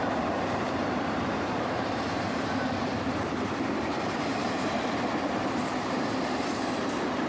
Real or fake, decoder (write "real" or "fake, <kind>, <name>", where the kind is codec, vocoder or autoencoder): fake, vocoder, BigVGAN v2